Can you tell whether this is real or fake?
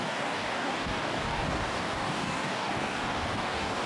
fake